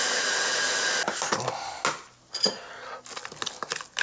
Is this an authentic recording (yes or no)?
yes